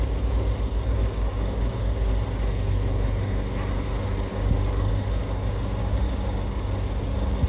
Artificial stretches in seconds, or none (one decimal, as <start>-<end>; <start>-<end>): 1.0-2.1; 4.3-4.9; 5.8-6.4